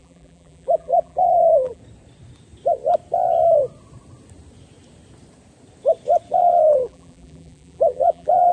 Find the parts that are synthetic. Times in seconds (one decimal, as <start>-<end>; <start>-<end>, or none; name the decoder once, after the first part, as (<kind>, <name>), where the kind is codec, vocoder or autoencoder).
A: 0.0-1.8 (vocoder, BigVGAN v2); 6.3-8.5